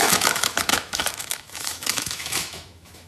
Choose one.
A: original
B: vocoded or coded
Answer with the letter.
B